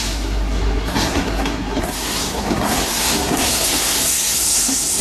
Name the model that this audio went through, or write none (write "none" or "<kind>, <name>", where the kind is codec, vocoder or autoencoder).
codec, SNAC